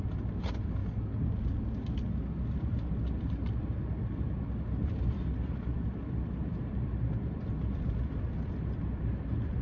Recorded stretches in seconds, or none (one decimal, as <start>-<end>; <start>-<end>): 0.8-2.1